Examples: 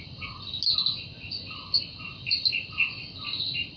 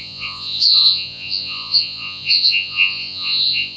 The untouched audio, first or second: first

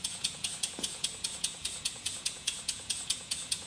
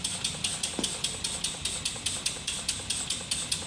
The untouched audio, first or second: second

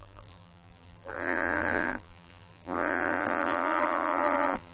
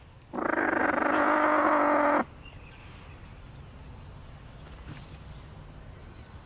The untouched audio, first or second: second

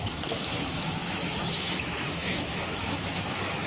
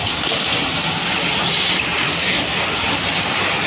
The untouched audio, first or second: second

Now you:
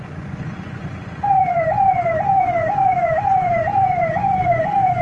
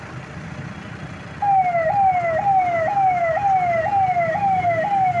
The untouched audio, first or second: second